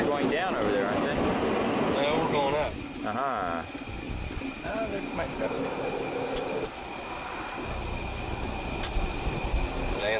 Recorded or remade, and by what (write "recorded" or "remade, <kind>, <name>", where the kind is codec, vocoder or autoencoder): recorded